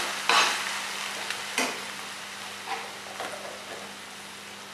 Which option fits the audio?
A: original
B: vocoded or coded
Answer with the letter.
A